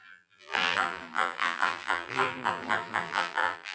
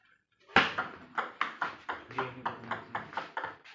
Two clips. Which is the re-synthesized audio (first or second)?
first